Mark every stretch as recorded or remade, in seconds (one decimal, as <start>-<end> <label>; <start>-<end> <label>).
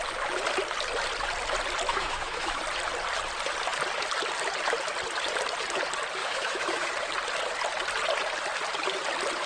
0.0-1.9 recorded; 1.9-2.6 remade; 2.6-6.2 recorded; 6.2-6.9 remade; 6.9-9.5 recorded